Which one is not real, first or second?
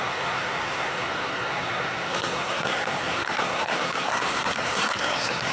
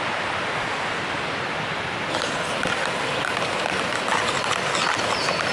first